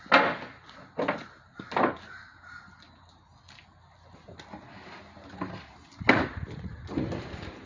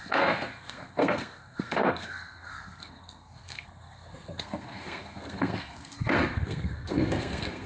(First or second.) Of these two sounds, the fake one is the second